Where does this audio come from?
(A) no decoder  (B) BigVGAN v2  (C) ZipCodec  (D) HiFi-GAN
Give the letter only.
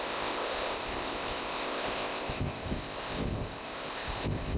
C